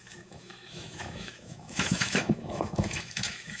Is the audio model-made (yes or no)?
yes